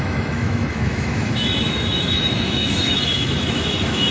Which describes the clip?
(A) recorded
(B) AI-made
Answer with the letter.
B